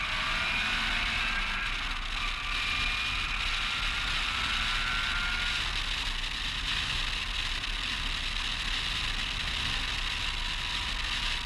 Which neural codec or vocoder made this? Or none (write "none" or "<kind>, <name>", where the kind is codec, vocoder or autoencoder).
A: none